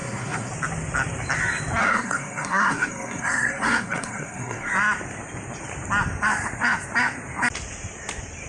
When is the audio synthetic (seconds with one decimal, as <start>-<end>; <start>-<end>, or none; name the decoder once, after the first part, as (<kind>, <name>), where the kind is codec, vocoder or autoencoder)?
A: 0.0-0.5 (codec, SNAC); 1.8-4.7